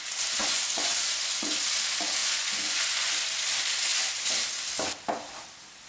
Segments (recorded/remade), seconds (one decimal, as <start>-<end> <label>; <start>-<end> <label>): 0.0-0.4 recorded; 0.4-1.5 remade; 1.5-2.2 recorded; 2.2-3.1 remade; 3.1-5.9 recorded